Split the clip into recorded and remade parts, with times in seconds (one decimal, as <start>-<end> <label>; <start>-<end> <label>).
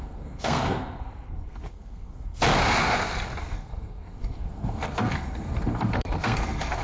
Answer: 0.0-2.4 remade; 2.4-3.4 recorded; 3.4-6.8 remade